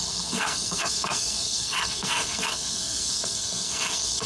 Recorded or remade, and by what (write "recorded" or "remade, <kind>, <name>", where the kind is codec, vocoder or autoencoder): remade, codec, SNAC